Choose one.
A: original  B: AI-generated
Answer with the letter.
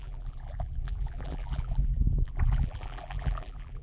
B